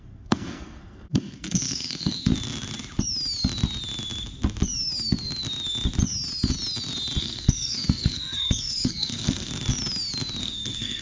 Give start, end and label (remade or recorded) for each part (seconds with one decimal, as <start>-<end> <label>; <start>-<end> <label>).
0.0-2.3 remade; 2.3-7.2 recorded; 7.2-9.5 remade; 9.5-10.4 recorded; 10.4-11.0 remade